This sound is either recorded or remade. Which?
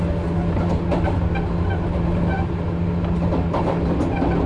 recorded